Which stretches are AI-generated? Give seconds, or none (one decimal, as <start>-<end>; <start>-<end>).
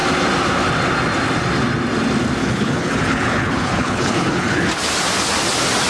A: 2.4-4.6